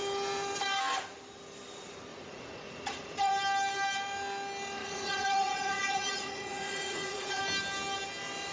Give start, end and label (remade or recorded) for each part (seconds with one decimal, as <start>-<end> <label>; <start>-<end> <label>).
0.0-2.1 recorded; 2.1-3.3 remade; 3.3-4.8 recorded; 4.8-7.4 remade; 7.4-8.5 recorded